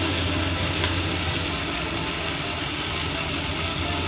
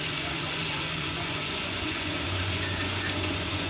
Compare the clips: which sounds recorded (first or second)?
first